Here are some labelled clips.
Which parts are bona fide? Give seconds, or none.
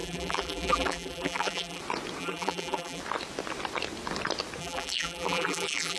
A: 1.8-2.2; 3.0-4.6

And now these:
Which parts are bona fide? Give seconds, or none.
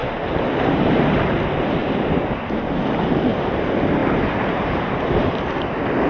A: 1.4-4.0; 5.3-6.1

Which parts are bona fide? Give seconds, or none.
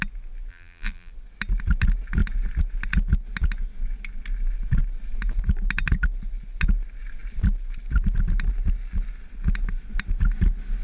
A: 0.0-0.5; 1.1-10.8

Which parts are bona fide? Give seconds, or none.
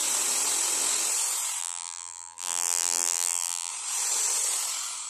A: 0.0-1.6; 3.7-5.1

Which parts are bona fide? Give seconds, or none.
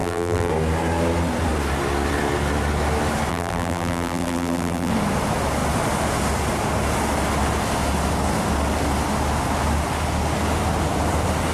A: 0.5-3.3; 4.9-11.5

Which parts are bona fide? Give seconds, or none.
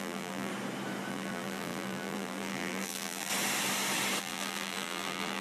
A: 0.5-1.1; 3.3-4.2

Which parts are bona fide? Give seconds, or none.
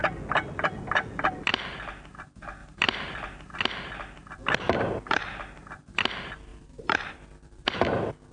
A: 0.0-2.6; 3.6-6.5; 7.8-8.3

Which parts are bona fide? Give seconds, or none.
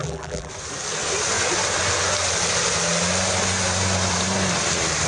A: 0.5-5.1